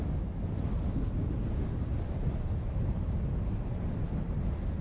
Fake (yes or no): no